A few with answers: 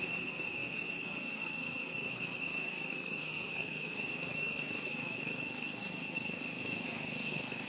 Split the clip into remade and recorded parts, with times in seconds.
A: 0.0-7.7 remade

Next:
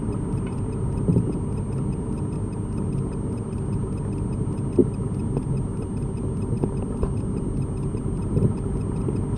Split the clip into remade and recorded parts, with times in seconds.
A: 0.0-9.4 recorded

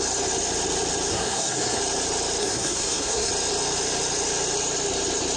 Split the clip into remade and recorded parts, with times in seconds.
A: 0.0-1.1 recorded; 1.1-1.8 remade; 1.8-2.4 recorded; 2.4-3.3 remade; 3.3-5.4 recorded